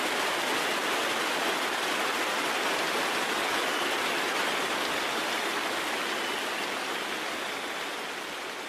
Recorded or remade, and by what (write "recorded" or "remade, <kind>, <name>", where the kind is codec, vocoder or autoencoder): recorded